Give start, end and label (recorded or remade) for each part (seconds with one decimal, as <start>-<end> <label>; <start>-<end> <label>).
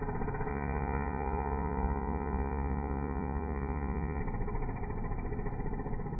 0.0-0.5 recorded; 0.5-4.2 remade; 4.2-6.2 recorded